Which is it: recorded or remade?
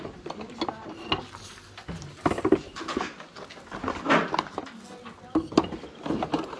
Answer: recorded